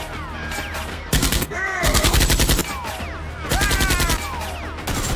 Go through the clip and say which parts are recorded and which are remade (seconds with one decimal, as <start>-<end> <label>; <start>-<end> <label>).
0.0-0.9 recorded; 0.9-2.2 remade; 2.2-5.2 recorded